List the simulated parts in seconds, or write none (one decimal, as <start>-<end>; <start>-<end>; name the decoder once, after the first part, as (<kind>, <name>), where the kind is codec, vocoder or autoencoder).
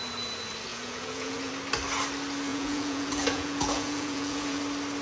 0.7-1.5 (vocoder, Vocos); 2.5-4.6